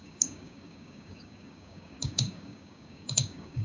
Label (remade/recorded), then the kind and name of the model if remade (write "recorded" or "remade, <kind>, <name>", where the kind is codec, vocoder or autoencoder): remade, codec, DAC